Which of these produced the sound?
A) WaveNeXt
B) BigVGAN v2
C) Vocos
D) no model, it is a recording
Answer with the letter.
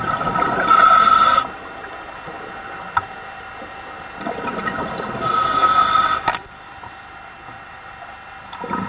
D